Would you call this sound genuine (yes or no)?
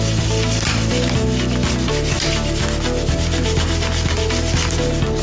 yes